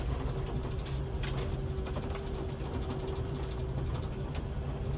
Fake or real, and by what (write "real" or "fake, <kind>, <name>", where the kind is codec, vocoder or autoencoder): real